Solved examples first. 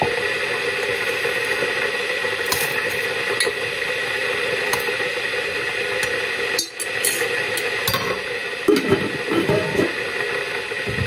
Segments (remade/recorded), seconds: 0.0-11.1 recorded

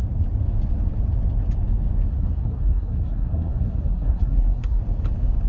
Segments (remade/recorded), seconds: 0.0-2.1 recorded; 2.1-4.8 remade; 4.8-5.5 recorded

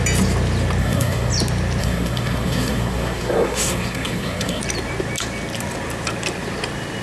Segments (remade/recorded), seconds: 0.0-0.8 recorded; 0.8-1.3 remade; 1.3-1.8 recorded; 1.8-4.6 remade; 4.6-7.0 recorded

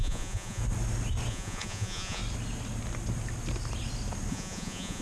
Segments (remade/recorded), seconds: 0.0-0.6 remade; 0.6-1.3 recorded; 1.3-2.2 remade; 2.2-4.3 recorded; 4.3-5.0 remade